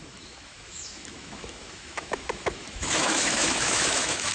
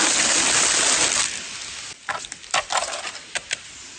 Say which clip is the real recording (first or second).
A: second